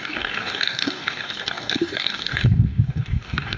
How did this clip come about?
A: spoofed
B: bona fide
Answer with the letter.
A